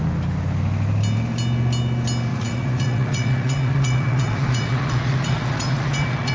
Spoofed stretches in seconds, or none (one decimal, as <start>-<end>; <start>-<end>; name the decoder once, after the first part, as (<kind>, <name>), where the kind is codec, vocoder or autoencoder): 2.3-6.3 (vocoder, Vocos)